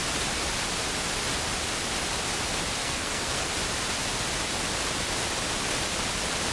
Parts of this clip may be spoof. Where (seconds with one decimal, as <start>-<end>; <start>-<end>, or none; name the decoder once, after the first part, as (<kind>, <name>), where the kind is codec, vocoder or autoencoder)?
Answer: 2.8-3.5 (codec, SNAC)